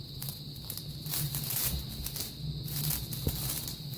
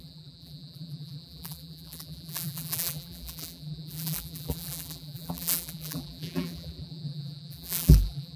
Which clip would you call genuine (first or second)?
first